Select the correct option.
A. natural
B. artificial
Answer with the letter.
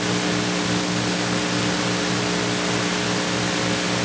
A